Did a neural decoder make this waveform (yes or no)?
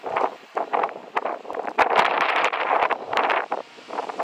yes